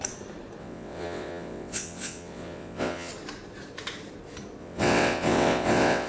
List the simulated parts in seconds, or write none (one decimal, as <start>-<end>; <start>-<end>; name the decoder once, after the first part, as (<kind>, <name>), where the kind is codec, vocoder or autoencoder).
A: 0.6-3.1 (vocoder, WaveNeXt); 4.6-6.1